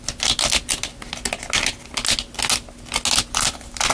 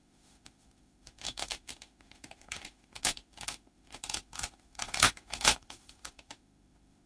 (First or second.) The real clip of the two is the first